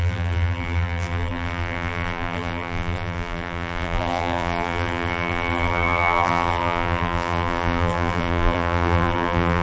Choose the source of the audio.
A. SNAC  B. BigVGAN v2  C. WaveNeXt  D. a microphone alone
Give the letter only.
B